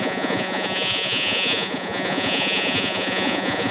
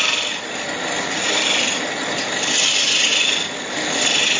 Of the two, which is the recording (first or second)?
second